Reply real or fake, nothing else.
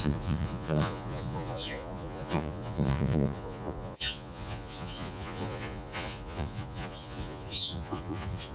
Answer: fake